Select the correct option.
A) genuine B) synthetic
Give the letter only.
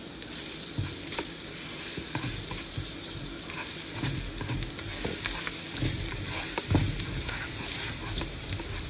A